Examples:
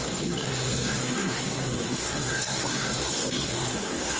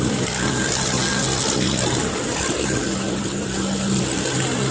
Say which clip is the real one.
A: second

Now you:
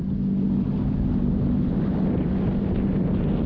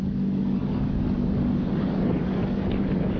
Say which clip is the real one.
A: first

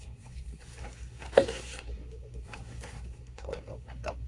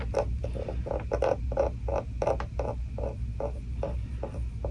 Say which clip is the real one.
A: second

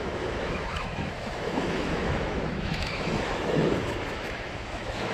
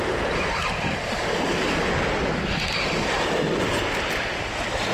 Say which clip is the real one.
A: second